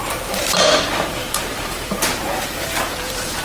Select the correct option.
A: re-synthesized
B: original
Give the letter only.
A